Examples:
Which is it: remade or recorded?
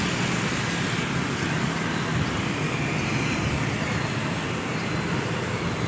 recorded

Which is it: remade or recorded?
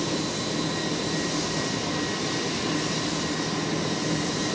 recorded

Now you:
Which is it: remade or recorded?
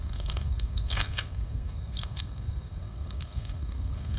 remade